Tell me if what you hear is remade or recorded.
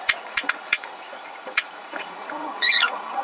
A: remade